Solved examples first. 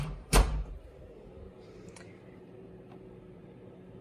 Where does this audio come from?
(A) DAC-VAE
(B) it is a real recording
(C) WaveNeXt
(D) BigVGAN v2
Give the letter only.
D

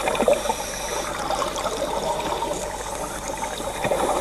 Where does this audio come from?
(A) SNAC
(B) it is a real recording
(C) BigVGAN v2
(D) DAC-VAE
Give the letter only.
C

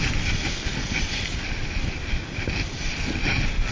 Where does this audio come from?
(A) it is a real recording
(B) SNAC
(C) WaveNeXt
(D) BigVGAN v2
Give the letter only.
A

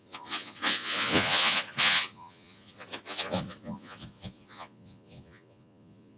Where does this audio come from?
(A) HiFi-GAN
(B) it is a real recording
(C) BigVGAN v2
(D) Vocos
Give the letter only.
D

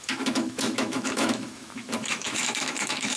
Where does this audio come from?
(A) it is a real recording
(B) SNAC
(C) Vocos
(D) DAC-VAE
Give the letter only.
D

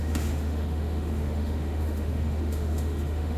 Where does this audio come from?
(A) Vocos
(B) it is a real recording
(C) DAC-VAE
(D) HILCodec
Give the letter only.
C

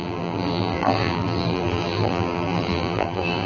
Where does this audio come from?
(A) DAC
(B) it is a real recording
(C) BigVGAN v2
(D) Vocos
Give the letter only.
C